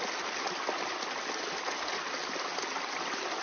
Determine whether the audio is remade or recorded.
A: recorded